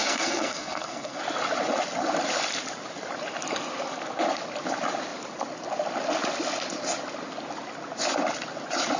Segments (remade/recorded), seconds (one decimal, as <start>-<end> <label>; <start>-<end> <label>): 0.0-1.2 remade; 1.2-9.0 recorded